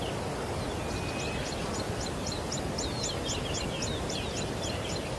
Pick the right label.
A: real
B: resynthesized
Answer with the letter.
A